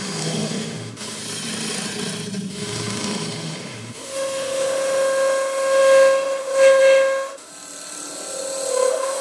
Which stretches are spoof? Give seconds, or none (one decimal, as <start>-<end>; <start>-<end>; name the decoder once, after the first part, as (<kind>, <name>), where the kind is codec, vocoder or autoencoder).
0.0-1.2 (autoencoder, DAC-VAE); 2.5-7.5; 8.7-9.2